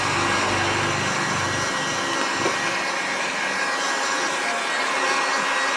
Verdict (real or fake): real